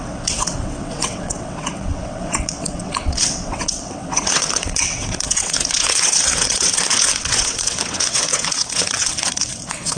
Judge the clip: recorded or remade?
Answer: remade